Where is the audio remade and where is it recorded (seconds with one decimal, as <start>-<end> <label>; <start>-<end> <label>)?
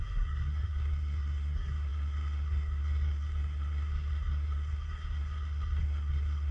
0.0-6.5 remade